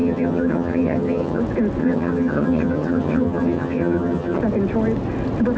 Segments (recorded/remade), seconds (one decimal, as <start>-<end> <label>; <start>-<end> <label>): 0.0-1.4 remade; 1.4-1.8 recorded; 1.8-4.4 remade; 4.4-5.6 recorded